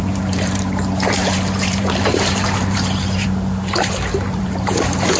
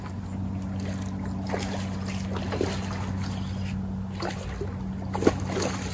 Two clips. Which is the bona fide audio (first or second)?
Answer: second